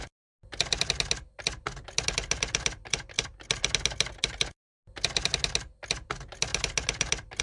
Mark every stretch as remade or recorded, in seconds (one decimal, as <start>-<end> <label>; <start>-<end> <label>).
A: 0.0-7.4 recorded